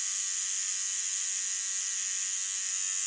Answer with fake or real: real